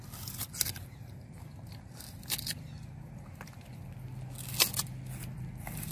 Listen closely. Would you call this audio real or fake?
real